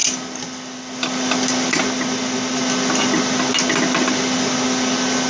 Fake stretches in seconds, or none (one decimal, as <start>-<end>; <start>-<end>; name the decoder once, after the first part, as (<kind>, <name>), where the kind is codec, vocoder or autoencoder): none